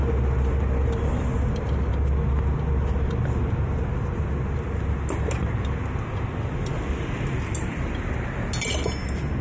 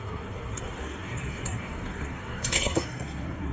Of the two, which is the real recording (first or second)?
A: first